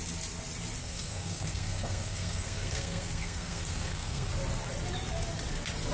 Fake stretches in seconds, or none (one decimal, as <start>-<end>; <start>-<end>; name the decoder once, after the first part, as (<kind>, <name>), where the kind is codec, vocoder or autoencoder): 0.8-4.3 (codec, SNAC)